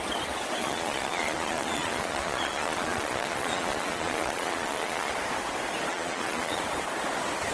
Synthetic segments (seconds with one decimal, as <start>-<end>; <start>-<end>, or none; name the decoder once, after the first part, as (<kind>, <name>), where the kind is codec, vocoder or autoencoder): 0.6-5.1 (vocoder, Vocos); 5.9-6.6